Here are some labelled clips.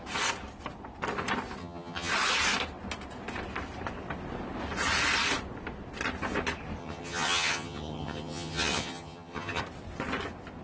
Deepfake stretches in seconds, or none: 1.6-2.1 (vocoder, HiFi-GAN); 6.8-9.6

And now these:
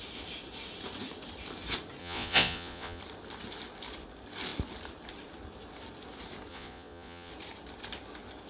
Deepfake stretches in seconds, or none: 2.0-3.0 (vocoder, Vocos); 6.5-7.3